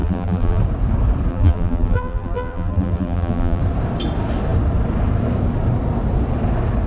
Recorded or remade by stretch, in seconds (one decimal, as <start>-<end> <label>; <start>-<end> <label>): 0.0-0.6 remade; 0.6-1.3 recorded; 1.3-3.6 remade; 3.6-6.9 recorded